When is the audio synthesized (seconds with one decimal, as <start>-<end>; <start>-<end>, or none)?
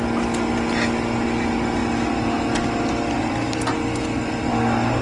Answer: none